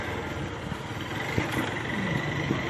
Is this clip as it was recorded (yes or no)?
yes